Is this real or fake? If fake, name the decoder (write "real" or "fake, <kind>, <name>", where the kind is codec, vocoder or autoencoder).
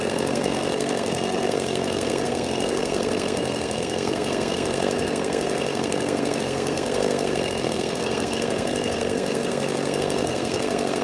fake, codec, SNAC